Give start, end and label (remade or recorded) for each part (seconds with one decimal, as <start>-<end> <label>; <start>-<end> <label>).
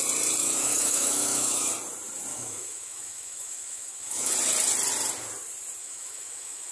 0.0-0.4 recorded; 0.4-1.7 remade; 1.7-2.3 recorded; 2.3-4.3 remade; 4.3-5.8 recorded; 5.8-6.7 remade